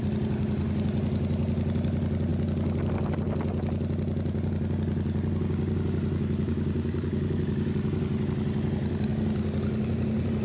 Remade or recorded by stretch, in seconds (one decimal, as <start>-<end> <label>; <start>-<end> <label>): 0.0-10.4 recorded